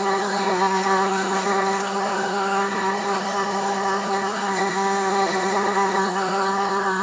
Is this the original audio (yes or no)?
no